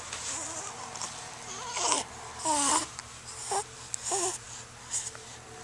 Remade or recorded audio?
recorded